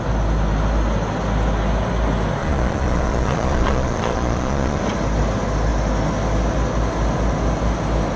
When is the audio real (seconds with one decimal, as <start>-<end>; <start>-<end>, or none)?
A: 0.0-2.4; 4.8-8.2